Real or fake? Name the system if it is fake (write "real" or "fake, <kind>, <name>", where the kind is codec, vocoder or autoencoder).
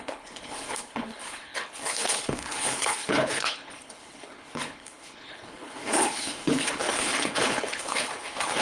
fake, codec, HILCodec